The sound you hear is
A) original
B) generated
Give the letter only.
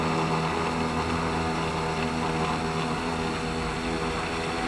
A